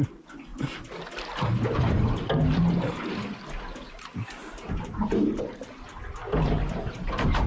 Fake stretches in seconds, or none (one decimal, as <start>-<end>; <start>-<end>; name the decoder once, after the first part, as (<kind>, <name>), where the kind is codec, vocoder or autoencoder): 4.4-5.4 (vocoder, BigVGAN v2)